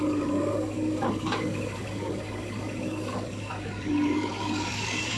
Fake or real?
fake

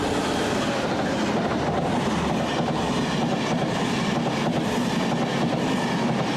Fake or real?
real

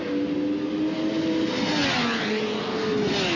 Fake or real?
real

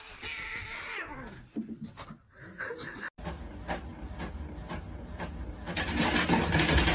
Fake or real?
real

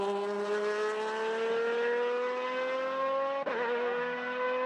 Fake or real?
real